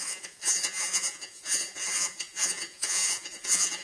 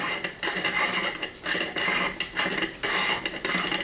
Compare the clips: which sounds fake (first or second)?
first